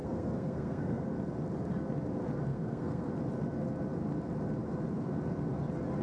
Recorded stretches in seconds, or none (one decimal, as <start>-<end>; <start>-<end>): 1.1-2.5; 3.1-6.0